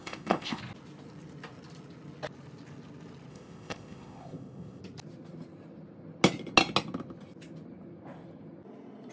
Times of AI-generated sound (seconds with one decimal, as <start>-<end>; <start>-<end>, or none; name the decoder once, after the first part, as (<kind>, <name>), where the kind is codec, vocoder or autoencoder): 0.0-0.6 (codec, ZipCodec); 3.3-4.8